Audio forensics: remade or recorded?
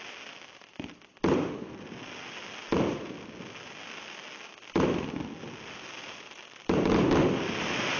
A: recorded